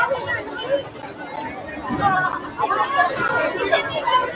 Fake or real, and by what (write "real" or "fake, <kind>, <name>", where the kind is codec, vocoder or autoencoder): real